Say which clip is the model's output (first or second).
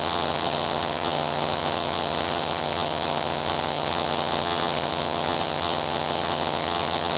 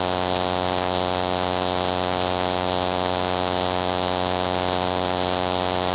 first